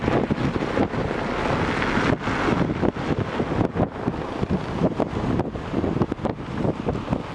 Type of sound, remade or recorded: recorded